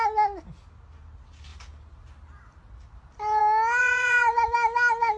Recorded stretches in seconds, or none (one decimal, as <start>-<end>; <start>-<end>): 0.0-3.8; 4.4-5.2